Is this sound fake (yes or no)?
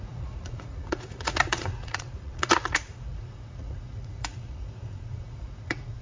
yes